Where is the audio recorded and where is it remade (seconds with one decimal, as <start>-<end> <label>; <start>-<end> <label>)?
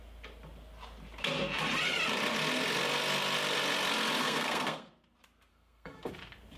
0.0-4.2 recorded; 4.2-4.9 remade; 4.9-5.5 recorded; 5.5-6.1 remade; 6.1-6.6 recorded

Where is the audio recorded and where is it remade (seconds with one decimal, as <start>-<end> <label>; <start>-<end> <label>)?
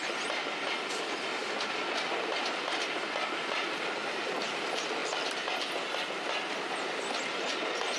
0.0-8.0 recorded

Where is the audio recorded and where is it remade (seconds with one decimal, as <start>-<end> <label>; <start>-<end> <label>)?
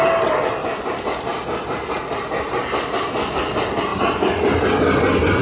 0.0-5.4 recorded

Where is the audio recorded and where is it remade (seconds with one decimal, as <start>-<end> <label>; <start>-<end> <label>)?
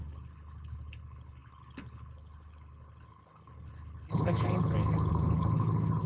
0.0-6.1 remade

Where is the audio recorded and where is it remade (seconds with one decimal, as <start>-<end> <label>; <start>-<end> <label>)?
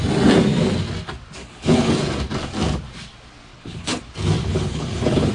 0.0-1.4 recorded; 1.4-1.9 remade; 1.9-3.5 recorded; 3.5-4.0 remade; 4.0-4.4 recorded; 4.4-5.3 remade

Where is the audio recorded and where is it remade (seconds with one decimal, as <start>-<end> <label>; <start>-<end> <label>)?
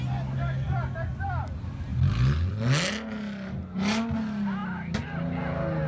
0.0-5.9 recorded